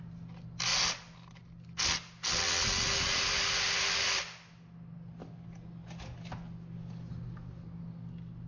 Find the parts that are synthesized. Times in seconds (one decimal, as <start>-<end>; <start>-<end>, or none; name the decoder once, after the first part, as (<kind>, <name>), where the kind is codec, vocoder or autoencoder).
none